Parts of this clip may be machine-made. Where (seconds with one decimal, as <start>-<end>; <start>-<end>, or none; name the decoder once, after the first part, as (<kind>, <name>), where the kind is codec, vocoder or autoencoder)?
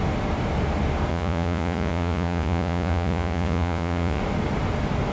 1.1-4.2 (vocoder, Vocos)